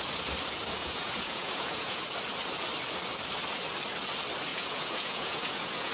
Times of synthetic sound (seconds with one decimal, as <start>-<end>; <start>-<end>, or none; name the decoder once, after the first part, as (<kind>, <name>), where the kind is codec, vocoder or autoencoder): 0.8-2.0 (vocoder, Vocos); 4.5-5.9